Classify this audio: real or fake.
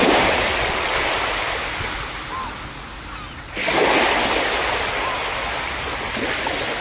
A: real